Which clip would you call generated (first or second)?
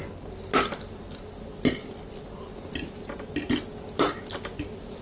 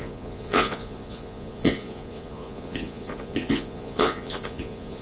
second